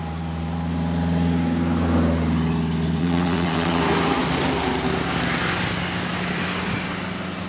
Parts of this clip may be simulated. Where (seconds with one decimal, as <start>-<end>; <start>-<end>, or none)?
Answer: 3.0-3.8